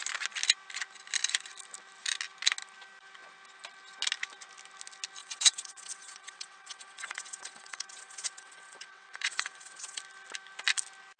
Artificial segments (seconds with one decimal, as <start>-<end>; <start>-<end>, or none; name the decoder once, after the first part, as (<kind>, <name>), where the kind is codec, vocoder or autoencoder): 5.2-10.0 (vocoder, WaveNeXt)